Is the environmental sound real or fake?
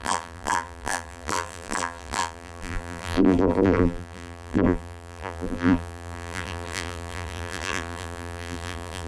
fake